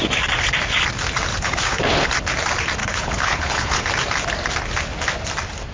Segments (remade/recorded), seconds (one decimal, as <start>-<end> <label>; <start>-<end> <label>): 0.0-1.3 recorded; 1.3-2.1 remade; 2.1-2.8 recorded; 2.8-3.8 remade; 3.8-5.7 recorded